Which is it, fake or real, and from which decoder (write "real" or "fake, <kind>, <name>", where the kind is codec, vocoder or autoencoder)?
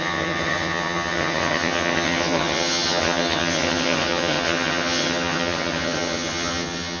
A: fake, vocoder, HiFi-GAN